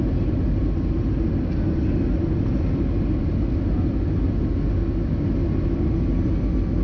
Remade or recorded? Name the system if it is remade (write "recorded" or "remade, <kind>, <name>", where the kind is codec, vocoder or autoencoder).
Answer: recorded